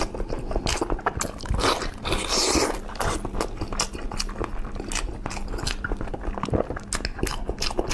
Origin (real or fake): real